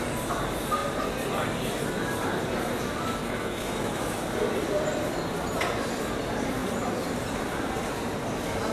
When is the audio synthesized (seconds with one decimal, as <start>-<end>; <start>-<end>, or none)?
3.2-4.0